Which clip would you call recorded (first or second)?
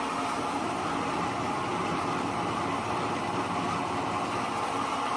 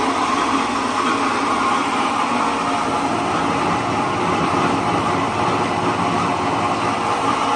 second